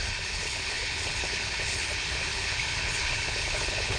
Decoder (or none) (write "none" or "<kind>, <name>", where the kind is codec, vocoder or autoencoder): codec, HILCodec